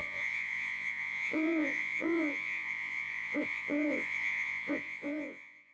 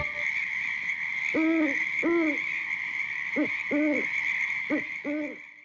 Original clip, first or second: second